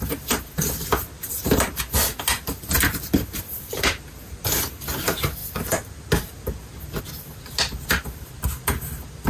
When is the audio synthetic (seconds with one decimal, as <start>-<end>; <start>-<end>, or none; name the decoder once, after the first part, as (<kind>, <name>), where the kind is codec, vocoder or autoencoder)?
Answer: none